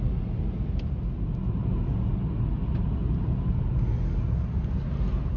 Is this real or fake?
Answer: real